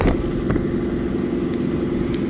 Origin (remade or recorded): recorded